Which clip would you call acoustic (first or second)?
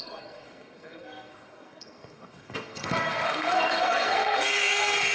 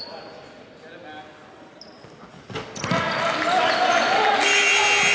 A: second